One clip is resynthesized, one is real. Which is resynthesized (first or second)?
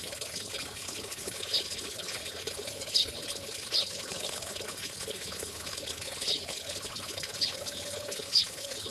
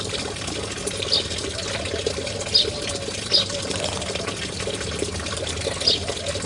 first